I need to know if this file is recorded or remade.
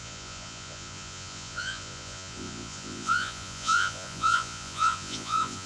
remade